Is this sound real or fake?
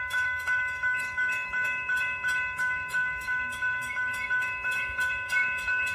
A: fake